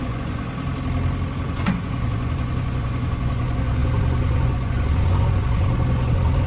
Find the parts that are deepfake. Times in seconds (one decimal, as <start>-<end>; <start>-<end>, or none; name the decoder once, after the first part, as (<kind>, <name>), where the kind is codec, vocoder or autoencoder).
0.0-0.5 (vocoder, Vocos); 1.5-6.5